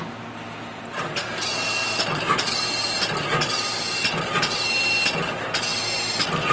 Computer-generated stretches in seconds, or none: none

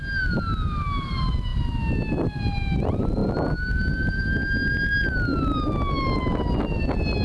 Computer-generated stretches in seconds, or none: none